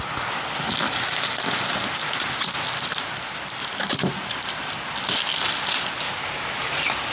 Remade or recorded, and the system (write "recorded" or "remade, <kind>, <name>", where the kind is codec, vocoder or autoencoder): recorded